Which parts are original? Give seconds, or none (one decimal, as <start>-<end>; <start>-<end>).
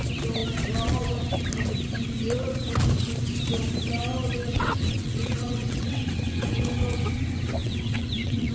0.0-4.4; 6.6-7.6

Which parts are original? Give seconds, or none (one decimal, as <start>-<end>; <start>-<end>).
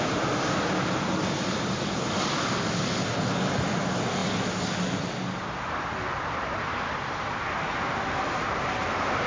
0.0-9.3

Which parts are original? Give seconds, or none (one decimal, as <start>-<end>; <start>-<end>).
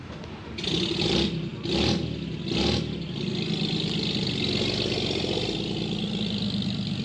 0.0-7.0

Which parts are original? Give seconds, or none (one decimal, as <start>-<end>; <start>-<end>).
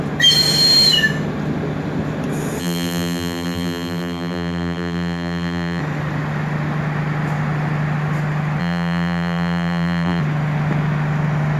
0.0-2.6; 5.8-8.6; 10.2-11.6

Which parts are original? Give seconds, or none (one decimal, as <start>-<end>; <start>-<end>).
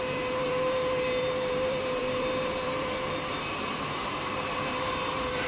none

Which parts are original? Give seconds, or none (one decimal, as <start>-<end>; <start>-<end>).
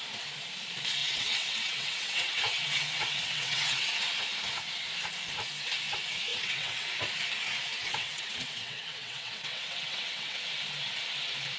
0.0-1.0; 4.0-6.3; 6.9-7.7; 10.5-11.6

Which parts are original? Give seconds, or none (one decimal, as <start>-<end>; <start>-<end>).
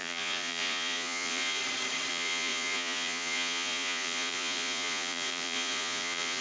1.6-2.1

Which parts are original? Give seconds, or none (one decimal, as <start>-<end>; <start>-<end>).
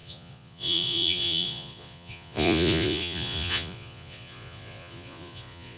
none